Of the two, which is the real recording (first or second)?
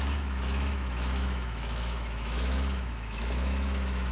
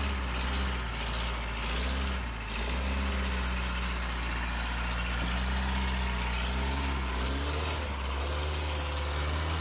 second